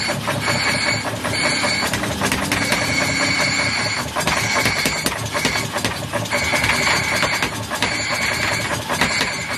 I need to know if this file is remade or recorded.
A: recorded